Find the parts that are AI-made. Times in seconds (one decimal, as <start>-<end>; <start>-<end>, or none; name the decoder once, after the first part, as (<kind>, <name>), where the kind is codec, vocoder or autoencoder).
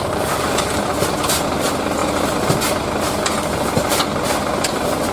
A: 2.0-2.5 (vocoder, BigVGAN v2)